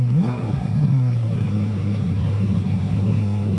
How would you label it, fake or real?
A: fake